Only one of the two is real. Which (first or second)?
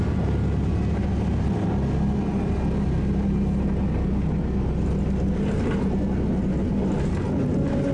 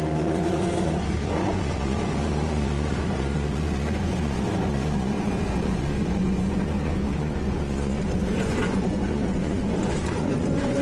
first